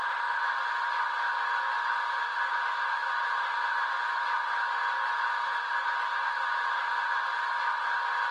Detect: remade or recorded recorded